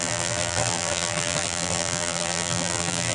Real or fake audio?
fake